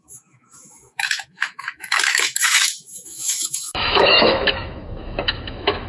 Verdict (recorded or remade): remade